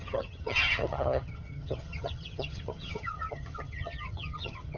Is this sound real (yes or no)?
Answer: no